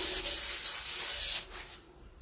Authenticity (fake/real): real